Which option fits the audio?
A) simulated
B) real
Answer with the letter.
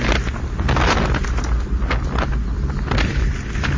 B